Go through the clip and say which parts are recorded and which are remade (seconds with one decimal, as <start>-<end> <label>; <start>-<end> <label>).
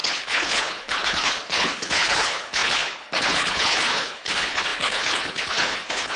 0.0-6.2 remade